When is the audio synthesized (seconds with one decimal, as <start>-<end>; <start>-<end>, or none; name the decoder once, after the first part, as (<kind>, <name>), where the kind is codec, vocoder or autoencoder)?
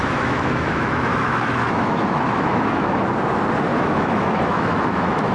0.0-3.0 (autoencoder, DAC-VAE); 3.7-5.3